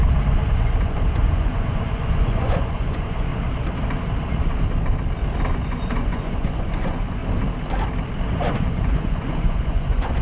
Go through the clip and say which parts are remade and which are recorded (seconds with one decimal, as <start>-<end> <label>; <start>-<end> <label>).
0.0-0.5 recorded; 0.5-3.3 remade; 3.3-5.5 recorded; 5.5-7.2 remade; 7.2-8.3 recorded; 8.3-10.2 remade